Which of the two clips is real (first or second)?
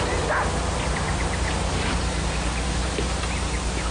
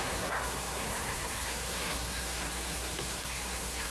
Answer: first